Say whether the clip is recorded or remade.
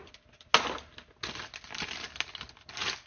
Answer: recorded